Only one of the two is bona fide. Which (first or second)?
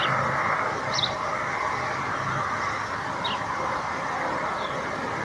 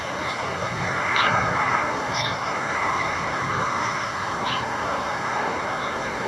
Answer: first